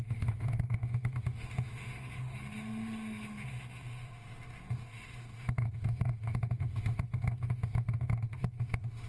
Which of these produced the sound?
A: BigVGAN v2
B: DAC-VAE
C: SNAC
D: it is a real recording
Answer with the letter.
B